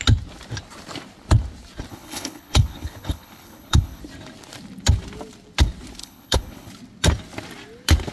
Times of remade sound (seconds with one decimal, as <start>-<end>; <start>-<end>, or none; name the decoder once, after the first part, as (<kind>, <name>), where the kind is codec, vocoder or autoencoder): 1.9-4.0 (codec, HILCodec); 6.0-6.7